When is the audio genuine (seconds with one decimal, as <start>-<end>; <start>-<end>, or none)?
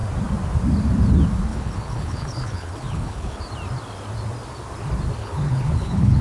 0.0-1.5; 3.4-5.2